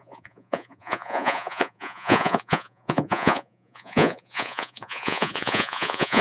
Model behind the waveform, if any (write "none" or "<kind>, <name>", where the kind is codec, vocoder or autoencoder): vocoder, Vocos